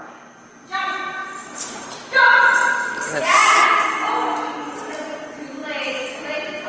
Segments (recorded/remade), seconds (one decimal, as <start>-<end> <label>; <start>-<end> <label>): 0.0-6.7 recorded